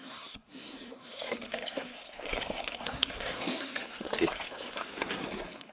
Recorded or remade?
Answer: remade